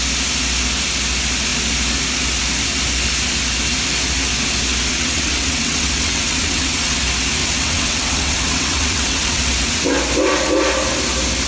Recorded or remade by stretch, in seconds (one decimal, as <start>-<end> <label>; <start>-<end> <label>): 0.0-4.9 recorded; 4.9-7.0 remade; 7.0-7.4 recorded; 7.4-9.9 remade; 9.9-11.5 recorded